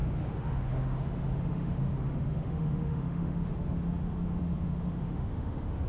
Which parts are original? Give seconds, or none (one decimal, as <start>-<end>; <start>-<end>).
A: none